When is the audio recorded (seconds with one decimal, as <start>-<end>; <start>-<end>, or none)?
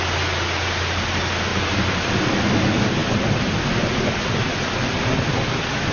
0.0-1.5; 2.4-5.9